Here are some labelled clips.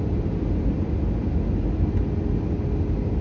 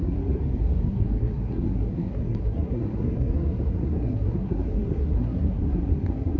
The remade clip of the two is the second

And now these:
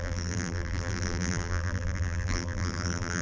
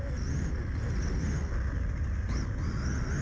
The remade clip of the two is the first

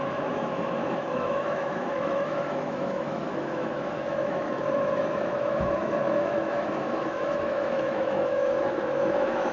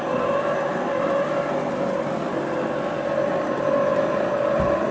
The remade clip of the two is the first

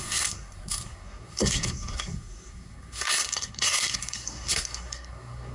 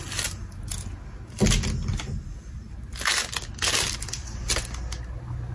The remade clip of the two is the first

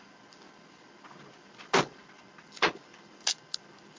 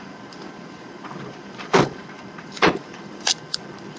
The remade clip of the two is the second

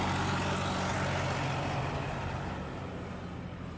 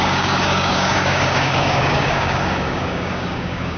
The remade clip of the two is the second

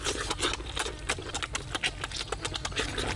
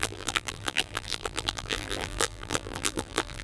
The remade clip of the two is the second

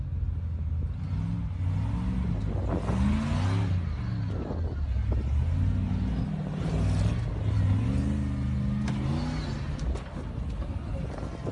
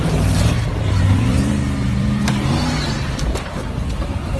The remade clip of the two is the second